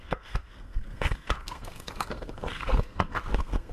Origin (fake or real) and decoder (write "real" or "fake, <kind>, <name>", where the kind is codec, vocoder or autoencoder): fake, codec, SNAC